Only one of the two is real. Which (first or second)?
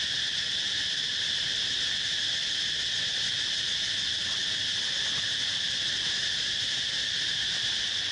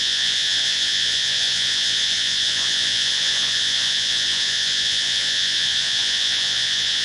first